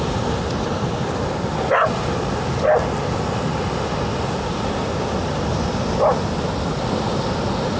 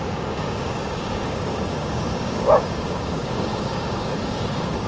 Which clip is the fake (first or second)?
second